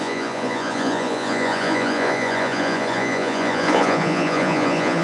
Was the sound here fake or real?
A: fake